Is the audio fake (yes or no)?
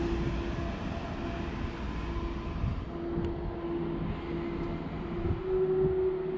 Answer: no